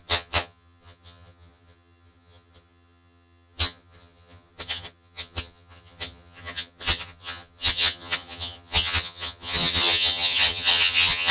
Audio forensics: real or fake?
fake